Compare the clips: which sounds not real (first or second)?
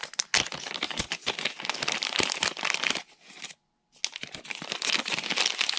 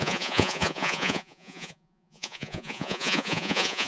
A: second